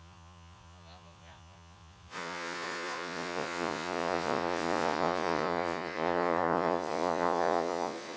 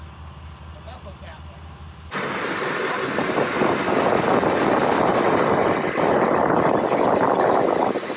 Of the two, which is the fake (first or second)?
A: first